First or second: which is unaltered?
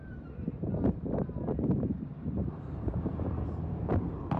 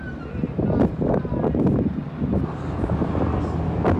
second